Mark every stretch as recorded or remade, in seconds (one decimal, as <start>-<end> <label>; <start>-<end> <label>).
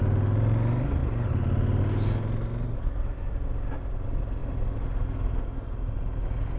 0.0-6.6 recorded